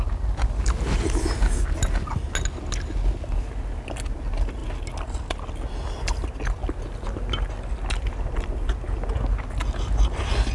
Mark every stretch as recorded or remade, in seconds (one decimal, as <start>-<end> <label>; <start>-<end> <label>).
0.0-10.5 recorded